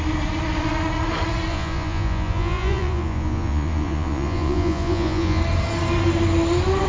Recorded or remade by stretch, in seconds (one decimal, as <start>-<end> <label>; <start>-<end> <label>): 0.0-1.5 recorded; 1.5-5.4 remade; 5.4-6.9 recorded